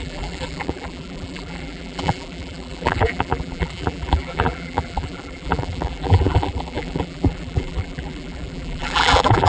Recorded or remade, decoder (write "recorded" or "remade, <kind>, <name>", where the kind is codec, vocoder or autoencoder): remade, vocoder, BigVGAN v2